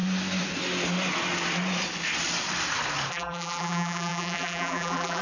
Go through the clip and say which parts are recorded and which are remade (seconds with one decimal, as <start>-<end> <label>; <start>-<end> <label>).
0.0-3.1 recorded; 3.1-5.2 remade